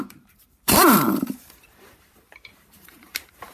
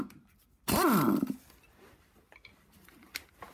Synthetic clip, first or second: first